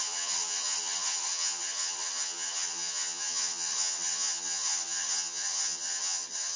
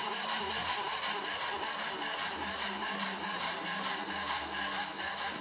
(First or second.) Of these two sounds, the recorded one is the second